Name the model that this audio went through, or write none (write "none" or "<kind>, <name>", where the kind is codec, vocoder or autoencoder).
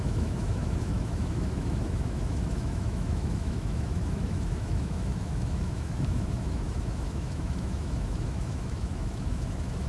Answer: autoencoder, DAC-VAE